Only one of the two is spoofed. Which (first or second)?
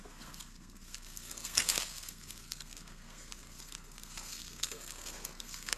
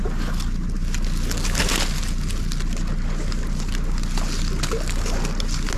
first